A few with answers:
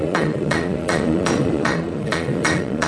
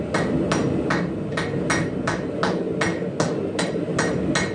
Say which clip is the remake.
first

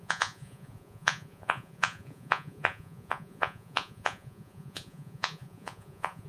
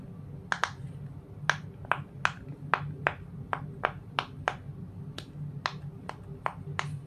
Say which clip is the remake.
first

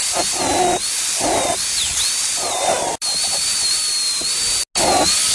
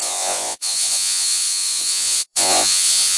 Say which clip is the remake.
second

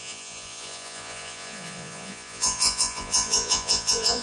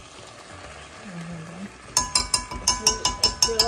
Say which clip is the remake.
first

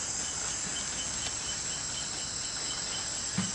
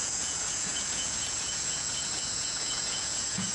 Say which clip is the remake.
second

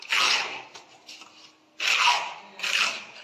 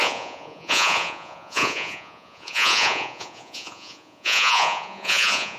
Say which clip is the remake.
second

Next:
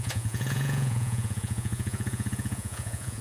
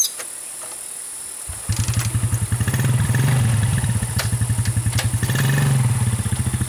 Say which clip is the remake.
first